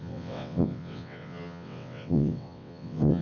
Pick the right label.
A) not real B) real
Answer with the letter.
A